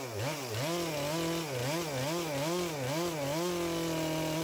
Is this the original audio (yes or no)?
yes